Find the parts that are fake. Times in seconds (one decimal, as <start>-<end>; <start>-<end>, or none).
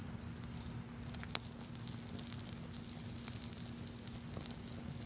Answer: none